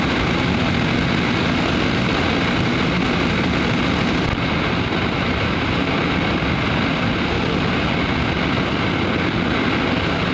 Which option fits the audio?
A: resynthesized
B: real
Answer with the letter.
B